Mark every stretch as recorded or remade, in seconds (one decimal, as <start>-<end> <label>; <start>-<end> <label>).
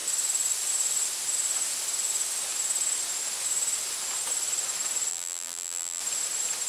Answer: 0.0-5.1 recorded; 5.1-6.0 remade; 6.0-6.7 recorded